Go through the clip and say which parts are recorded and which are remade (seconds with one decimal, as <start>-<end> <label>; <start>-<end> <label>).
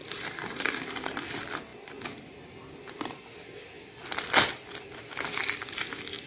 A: 0.0-0.7 remade; 0.7-6.3 recorded